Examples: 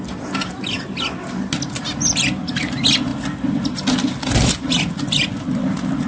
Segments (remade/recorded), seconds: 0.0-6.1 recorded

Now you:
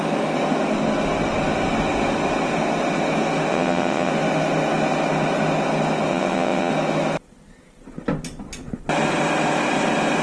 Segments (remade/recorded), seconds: 0.0-3.5 recorded; 3.5-4.1 remade; 4.1-6.1 recorded; 6.1-6.7 remade; 6.7-10.2 recorded

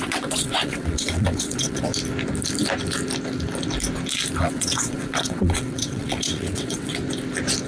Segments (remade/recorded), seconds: 0.0-1.9 remade; 1.9-4.4 recorded; 4.4-7.0 remade; 7.0-7.7 recorded

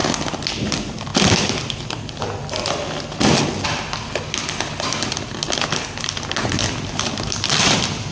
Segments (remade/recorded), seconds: 0.0-8.1 recorded

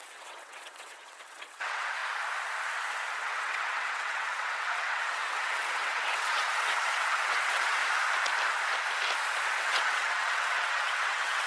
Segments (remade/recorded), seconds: 0.0-2.0 remade; 2.0-3.2 recorded; 3.2-7.8 remade; 7.8-9.6 recorded; 9.6-11.5 remade

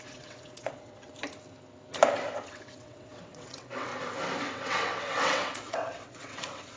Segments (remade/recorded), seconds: 0.0-1.1 remade; 1.1-2.5 recorded; 2.5-3.9 remade; 3.9-4.4 recorded; 4.4-6.8 remade

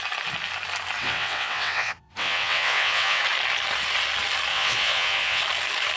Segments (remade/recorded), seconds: 0.0-1.0 recorded; 1.0-3.2 remade; 3.2-4.5 recorded; 4.5-5.4 remade; 5.4-6.0 recorded

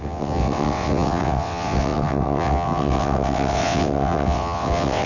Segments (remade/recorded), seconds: 0.0-5.1 remade